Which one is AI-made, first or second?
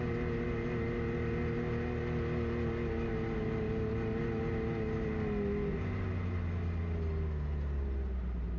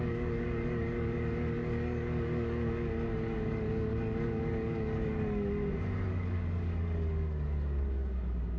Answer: second